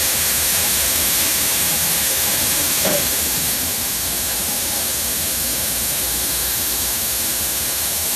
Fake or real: fake